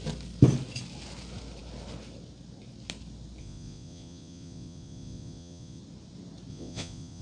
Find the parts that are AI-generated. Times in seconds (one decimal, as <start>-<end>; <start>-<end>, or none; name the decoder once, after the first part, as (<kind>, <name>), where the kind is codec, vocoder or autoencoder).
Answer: 3.4-5.8 (vocoder, Vocos); 6.5-7.2